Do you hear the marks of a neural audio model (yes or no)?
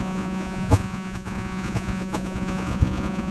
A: yes